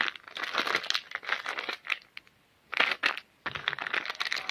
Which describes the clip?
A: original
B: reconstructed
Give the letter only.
A